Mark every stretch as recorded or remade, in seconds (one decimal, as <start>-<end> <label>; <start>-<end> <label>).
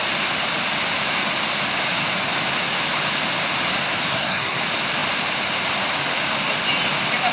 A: 0.0-4.1 recorded; 4.1-4.6 remade; 4.6-7.3 recorded